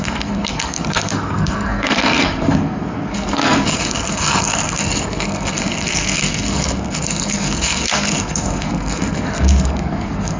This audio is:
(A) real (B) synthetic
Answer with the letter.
B